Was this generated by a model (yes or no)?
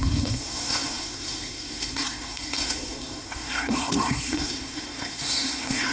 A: yes